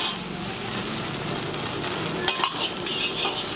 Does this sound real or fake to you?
real